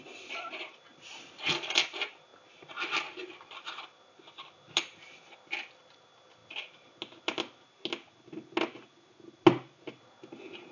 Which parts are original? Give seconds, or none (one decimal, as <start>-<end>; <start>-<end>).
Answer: 0.0-1.1; 1.9-10.7